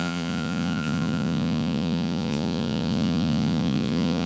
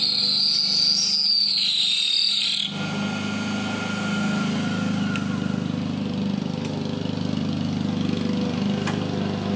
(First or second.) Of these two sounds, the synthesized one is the first